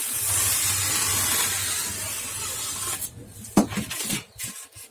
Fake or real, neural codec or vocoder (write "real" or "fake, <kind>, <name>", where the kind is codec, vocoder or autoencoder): real